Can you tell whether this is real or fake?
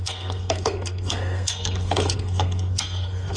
fake